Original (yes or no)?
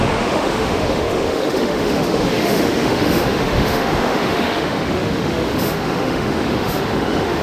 no